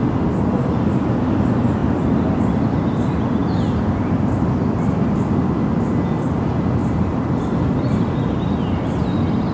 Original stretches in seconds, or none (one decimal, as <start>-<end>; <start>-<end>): 0.0-3.4; 5.3-6.8; 7.8-9.5